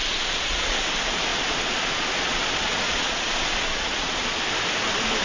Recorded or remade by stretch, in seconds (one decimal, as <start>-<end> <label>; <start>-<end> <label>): 0.0-0.8 remade; 0.8-1.3 recorded; 1.3-4.4 remade; 4.4-5.2 recorded